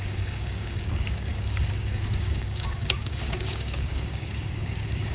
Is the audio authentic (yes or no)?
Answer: no